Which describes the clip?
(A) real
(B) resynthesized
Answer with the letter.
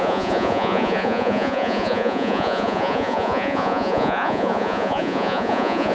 B